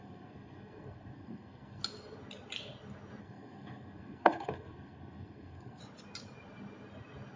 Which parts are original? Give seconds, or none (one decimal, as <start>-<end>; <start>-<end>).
1.8-3.2; 5.8-7.4